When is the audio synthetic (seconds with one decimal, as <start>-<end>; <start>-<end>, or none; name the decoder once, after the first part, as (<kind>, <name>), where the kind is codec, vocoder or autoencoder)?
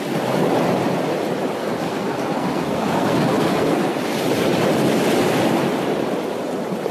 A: 1.6-4.0 (codec, SNAC)